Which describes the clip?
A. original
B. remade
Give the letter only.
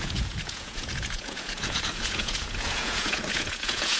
B